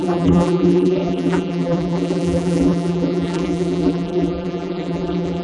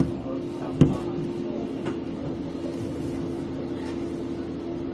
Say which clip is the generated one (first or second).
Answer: first